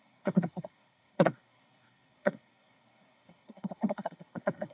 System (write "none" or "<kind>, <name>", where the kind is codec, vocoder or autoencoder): codec, SNAC